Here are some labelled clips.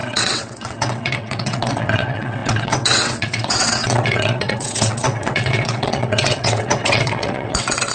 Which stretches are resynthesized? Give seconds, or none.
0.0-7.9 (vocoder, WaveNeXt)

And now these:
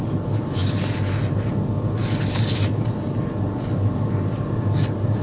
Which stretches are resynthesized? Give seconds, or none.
none

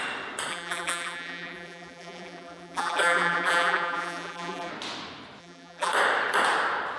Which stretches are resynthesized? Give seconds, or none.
0.5-4.7 (vocoder, BigVGAN v2); 5.4-5.9

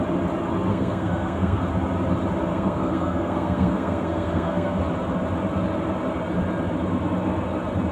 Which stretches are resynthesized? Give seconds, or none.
0.7-1.6 (codec, SNAC); 2.5-4.8

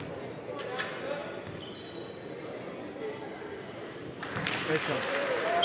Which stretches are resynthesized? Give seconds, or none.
3.8-5.6 (vocoder, BigVGAN v2)

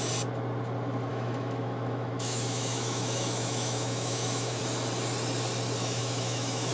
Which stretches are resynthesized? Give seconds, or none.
1.1-4.6 (autoencoder, DAC-VAE); 5.8-6.7

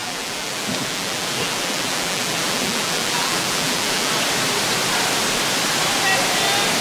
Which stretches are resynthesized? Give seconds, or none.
0.0-4.1 (vocoder, BigVGAN v2)